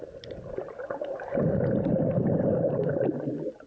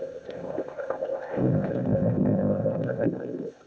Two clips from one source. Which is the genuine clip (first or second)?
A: first